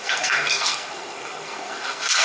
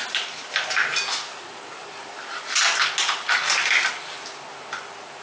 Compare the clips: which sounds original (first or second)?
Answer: second